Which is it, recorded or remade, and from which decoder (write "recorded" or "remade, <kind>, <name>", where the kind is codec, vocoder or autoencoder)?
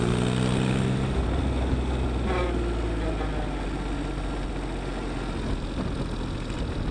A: recorded